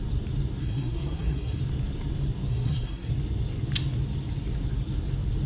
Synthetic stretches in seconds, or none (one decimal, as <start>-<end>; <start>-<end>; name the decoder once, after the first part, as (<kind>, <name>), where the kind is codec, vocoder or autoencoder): 0.6-1.6 (codec, SNAC); 2.5-3.1